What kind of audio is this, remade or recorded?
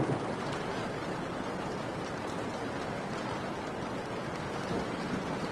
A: recorded